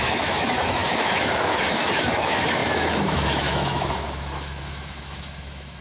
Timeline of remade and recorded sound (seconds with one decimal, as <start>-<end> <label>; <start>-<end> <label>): 0.0-5.8 remade